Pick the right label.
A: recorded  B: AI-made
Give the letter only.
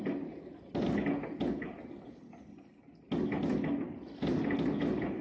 A